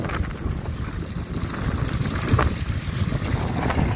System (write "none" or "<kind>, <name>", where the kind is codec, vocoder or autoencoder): none